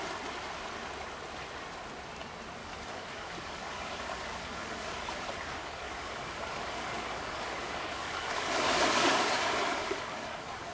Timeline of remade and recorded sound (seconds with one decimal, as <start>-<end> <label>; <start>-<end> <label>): 0.0-2.6 recorded; 2.6-5.1 remade; 5.1-5.6 recorded; 5.6-10.7 remade